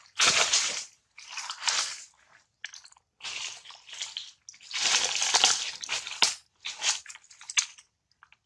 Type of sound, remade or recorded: recorded